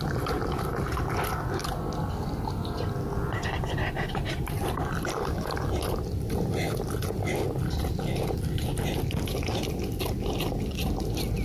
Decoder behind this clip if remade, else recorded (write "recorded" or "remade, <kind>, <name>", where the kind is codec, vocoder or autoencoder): recorded